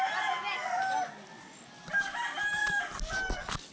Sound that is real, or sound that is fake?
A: real